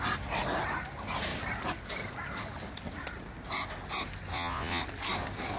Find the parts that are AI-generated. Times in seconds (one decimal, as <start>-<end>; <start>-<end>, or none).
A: 4.3-4.8

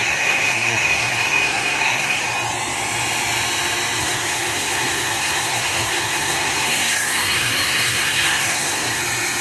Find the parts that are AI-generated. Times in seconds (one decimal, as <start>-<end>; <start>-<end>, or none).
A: 0.0-2.2; 4.0-9.0

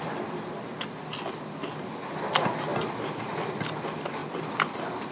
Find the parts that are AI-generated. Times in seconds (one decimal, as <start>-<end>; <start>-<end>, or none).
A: none

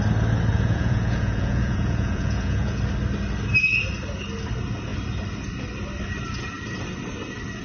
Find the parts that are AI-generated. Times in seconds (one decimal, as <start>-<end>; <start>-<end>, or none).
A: 0.5-2.8